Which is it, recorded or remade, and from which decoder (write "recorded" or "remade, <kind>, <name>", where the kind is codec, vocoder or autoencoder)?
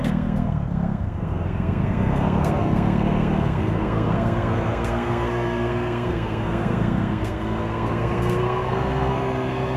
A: remade, codec, SNAC